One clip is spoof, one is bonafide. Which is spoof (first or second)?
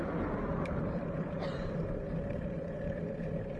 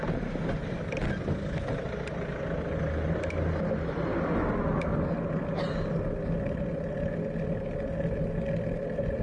first